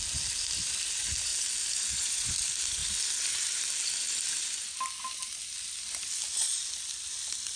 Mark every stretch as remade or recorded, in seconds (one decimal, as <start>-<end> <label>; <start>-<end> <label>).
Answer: 0.0-7.6 recorded